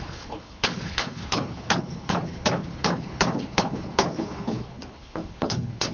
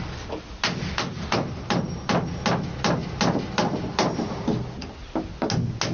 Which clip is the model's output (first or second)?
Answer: first